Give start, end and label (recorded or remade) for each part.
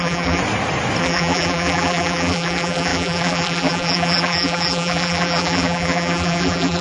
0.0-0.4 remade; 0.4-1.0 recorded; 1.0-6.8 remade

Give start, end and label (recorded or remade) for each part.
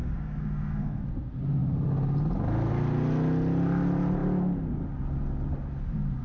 0.0-1.0 remade; 1.0-6.2 recorded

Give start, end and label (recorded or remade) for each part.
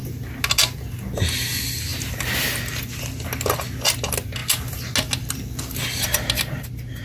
0.0-7.0 recorded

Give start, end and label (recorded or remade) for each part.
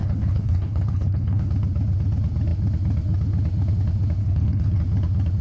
0.0-1.5 remade; 1.5-4.2 recorded; 4.2-4.8 remade; 4.8-5.4 recorded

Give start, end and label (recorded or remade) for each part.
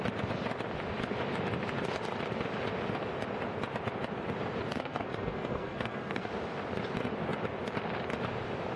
0.0-4.7 recorded; 4.7-6.3 remade; 6.3-8.8 recorded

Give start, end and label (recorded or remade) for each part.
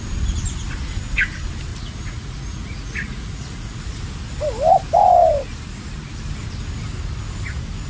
0.0-1.7 recorded; 1.7-4.0 remade; 4.0-7.9 recorded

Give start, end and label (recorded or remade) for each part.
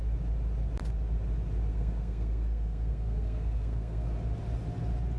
0.0-1.7 recorded; 1.7-4.1 remade; 4.1-5.2 recorded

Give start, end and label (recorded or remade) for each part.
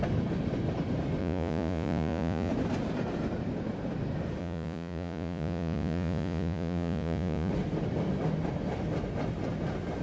0.0-1.2 recorded; 1.2-2.5 remade; 2.5-4.4 recorded; 4.4-7.5 remade; 7.5-10.0 recorded